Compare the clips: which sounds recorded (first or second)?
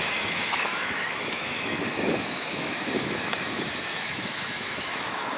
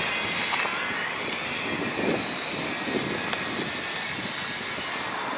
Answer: second